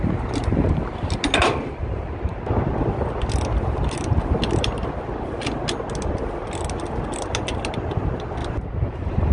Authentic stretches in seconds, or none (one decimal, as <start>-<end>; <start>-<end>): 0.0-1.8; 2.5-8.4